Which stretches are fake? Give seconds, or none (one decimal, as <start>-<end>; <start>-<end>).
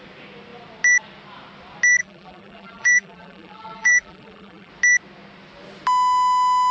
2.0-4.7